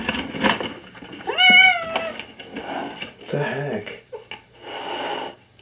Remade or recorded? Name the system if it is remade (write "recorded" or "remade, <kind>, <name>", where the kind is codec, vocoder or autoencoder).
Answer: recorded